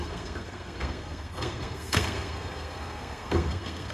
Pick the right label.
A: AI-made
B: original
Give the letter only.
A